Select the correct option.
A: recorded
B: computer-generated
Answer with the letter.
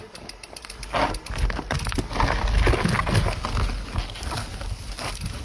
A